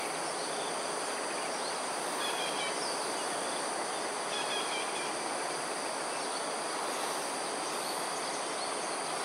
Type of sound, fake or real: real